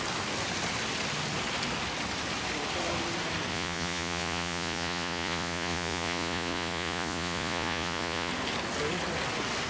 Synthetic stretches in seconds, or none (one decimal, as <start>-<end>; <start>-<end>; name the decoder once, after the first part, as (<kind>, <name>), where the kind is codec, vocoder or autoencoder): 3.5-8.3 (vocoder, Vocos)